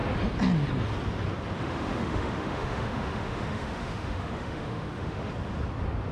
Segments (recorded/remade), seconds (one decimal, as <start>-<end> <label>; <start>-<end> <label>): 0.0-1.6 recorded; 1.6-5.3 remade; 5.3-6.1 recorded